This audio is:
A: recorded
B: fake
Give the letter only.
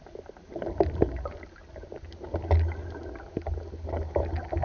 A